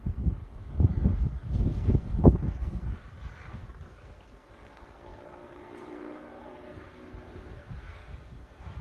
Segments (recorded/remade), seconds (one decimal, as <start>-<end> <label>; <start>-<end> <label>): 0.0-8.8 remade